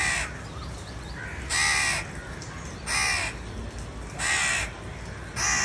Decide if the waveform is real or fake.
real